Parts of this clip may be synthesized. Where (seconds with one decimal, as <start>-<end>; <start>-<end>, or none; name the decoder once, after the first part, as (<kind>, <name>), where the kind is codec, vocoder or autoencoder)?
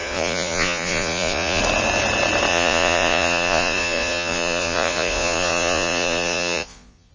0.0-1.6 (vocoder, Vocos); 2.5-7.1